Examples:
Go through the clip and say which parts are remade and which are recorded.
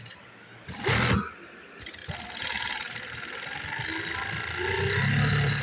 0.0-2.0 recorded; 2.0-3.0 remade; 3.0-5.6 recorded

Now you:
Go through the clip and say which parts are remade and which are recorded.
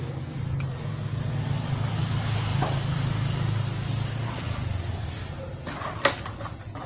0.0-6.9 recorded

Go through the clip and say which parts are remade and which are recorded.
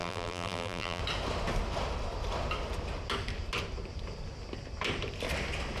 0.0-1.0 remade; 1.0-5.8 recorded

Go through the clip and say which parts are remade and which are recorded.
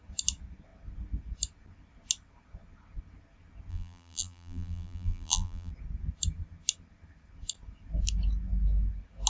0.0-3.7 recorded; 3.7-5.7 remade; 5.7-9.3 recorded